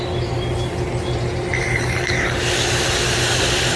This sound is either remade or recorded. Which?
recorded